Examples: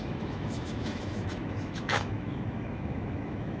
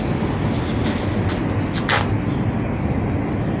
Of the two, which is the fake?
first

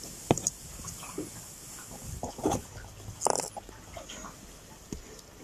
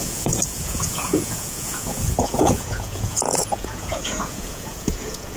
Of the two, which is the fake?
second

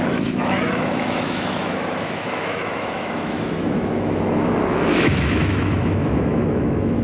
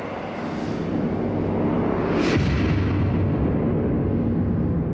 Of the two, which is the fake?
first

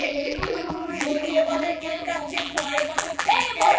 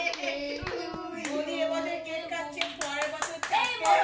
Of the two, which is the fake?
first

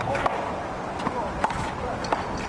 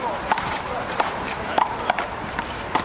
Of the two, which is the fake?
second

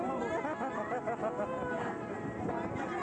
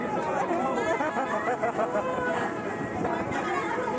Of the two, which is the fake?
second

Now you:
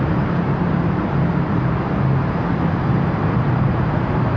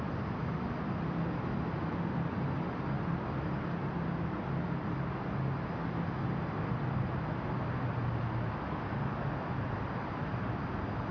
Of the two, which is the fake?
first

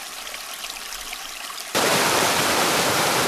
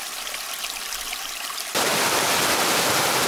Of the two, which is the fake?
first